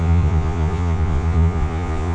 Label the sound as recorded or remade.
remade